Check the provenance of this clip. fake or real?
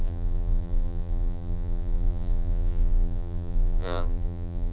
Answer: fake